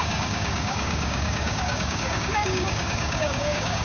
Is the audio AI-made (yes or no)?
yes